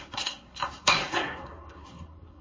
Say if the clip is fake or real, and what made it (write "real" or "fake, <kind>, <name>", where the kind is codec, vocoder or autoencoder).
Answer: fake, codec, SNAC